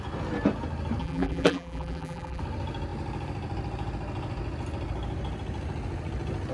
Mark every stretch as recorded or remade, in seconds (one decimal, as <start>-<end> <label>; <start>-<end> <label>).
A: 0.0-1.0 recorded; 1.0-2.4 remade; 2.4-6.5 recorded